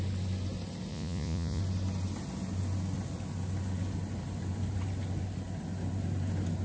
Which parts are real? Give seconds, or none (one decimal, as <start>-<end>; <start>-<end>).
0.0-0.9; 1.6-6.6